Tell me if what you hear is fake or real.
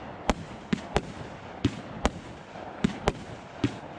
real